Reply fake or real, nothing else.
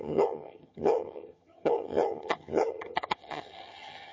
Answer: fake